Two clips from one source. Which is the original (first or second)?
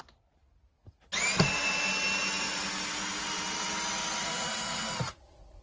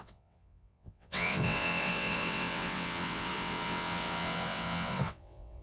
first